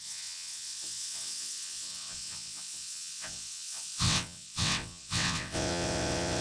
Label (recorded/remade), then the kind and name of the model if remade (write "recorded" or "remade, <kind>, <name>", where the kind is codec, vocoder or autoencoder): remade, vocoder, WaveNeXt